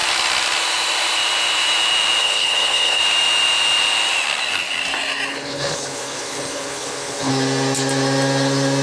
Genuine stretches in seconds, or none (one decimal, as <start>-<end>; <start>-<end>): 0.0-2.2; 3.0-5.3; 7.3-8.8